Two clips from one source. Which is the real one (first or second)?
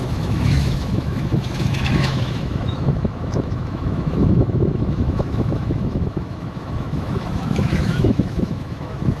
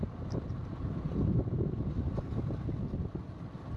second